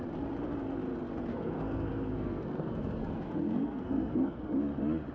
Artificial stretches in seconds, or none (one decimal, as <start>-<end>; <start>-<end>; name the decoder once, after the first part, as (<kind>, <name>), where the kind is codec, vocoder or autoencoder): 1.3-4.4 (codec, SNAC)